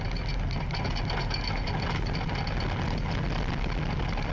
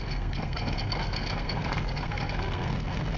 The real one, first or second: first